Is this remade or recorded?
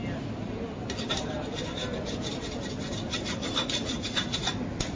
recorded